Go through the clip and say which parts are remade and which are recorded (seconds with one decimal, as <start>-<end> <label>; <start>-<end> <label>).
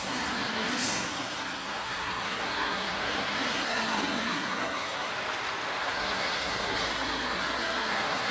0.0-5.1 remade; 5.1-5.8 recorded; 5.8-8.3 remade